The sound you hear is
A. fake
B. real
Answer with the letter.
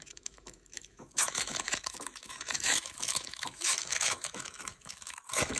A